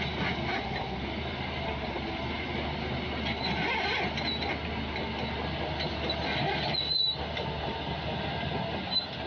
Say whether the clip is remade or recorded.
recorded